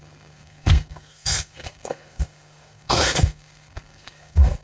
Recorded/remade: remade